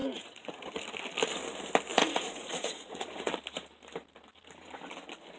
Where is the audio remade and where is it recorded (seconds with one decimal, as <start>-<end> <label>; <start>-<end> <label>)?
0.0-0.7 remade; 0.7-1.9 recorded; 1.9-3.3 remade; 3.3-5.4 recorded